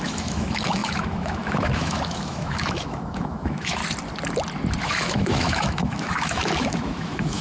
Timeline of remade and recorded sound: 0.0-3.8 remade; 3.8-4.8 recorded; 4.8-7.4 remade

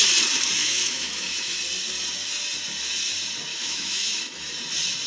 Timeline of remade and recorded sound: 0.0-0.6 recorded; 0.6-1.6 remade; 1.6-3.5 recorded; 3.5-4.5 remade; 4.5-5.1 recorded